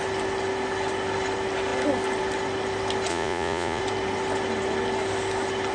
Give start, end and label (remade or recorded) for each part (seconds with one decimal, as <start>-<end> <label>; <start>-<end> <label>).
0.0-3.1 recorded; 3.1-3.8 remade; 3.8-5.7 recorded